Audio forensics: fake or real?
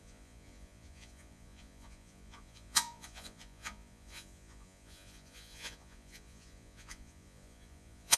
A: fake